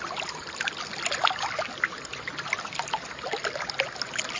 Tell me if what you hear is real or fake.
real